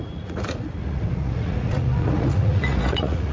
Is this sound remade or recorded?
remade